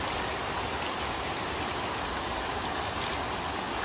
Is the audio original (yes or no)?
yes